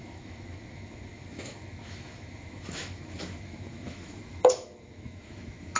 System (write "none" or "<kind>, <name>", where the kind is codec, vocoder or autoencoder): autoencoder, DAC-VAE